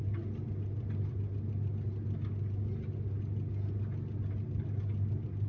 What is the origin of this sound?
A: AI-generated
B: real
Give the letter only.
B